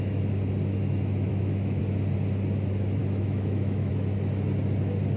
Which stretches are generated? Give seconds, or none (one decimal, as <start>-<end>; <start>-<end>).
1.3-1.8; 3.0-3.9